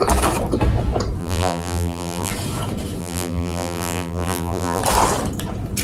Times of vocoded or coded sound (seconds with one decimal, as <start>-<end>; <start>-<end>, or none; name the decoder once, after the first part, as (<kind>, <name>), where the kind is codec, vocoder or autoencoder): 1.2-2.3 (vocoder, BigVGAN v2); 3.0-4.8

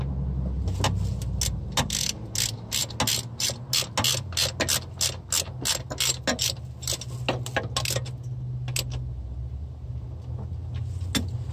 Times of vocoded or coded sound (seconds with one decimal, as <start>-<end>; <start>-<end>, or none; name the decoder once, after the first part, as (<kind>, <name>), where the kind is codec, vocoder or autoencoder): none